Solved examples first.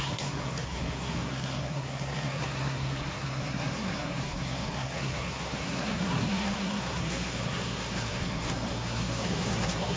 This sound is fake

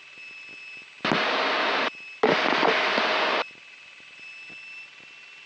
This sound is real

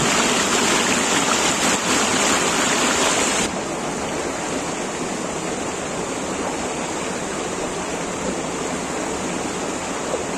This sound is real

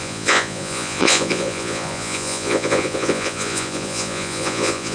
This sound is fake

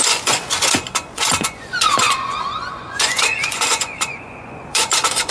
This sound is fake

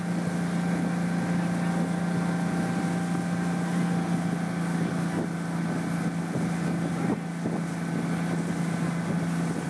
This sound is real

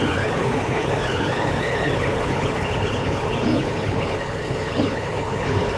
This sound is fake